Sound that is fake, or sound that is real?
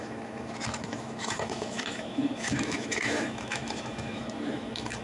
fake